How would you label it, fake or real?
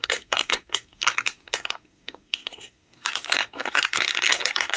fake